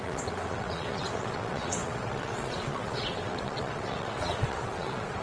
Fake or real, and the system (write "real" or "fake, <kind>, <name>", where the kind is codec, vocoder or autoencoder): fake, vocoder, WaveNeXt